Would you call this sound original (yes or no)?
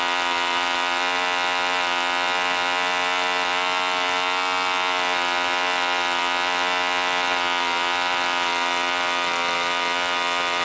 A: yes